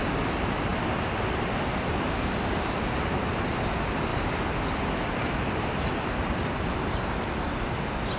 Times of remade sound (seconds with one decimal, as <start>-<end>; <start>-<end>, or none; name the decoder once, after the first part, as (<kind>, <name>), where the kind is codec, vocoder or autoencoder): 0.7-2.5 (vocoder, BigVGAN v2); 4.1-6.5